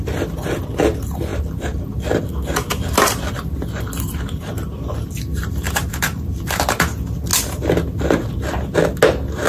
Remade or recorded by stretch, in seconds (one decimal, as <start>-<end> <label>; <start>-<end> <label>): 0.0-5.3 recorded; 5.3-6.5 remade; 6.5-9.5 recorded